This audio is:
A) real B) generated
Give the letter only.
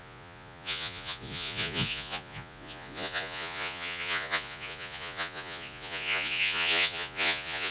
B